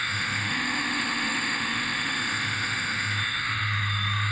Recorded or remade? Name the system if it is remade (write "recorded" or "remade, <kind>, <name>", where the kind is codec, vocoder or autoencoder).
remade, autoencoder, DAC-VAE